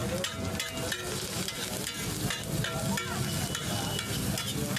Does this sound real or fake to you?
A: real